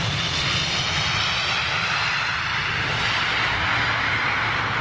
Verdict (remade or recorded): recorded